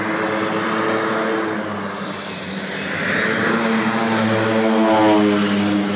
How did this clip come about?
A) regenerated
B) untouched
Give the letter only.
B